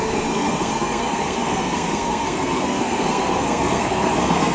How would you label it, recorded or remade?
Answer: remade